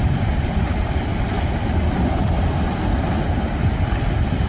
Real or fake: real